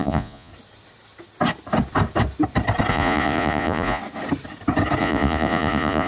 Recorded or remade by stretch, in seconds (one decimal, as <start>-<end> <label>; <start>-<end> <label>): 0.0-0.5 remade; 0.5-2.9 recorded; 2.9-4.0 remade; 4.0-5.0 recorded; 5.0-6.1 remade